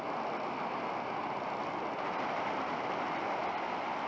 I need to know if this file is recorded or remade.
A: recorded